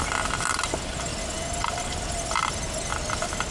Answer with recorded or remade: recorded